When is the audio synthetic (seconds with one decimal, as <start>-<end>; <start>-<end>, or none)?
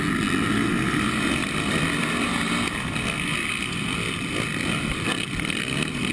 1.4-2.5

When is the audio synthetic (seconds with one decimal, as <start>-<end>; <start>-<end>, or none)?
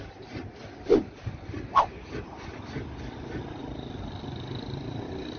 none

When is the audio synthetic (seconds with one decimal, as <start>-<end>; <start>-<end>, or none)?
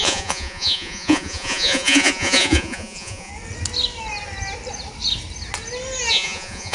0.0-3.3; 6.1-6.7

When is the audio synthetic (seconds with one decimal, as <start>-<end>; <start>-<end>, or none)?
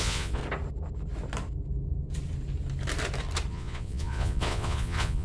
0.0-0.4; 3.5-5.2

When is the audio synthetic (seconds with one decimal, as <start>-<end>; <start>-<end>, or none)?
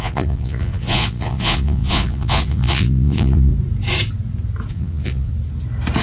0.0-3.5; 4.7-5.3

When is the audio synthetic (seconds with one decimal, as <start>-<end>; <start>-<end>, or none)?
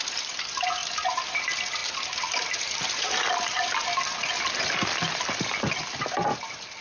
none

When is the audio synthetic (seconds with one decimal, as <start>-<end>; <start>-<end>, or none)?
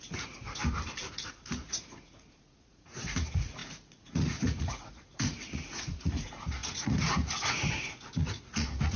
0.0-0.6; 1.1-9.0